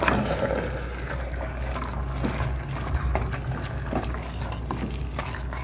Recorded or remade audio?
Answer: recorded